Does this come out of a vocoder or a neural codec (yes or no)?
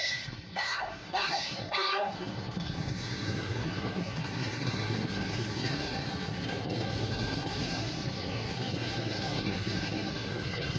yes